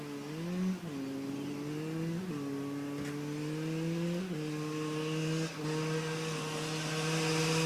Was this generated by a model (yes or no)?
no